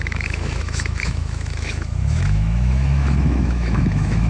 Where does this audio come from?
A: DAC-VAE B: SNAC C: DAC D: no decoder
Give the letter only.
A